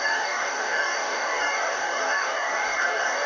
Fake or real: fake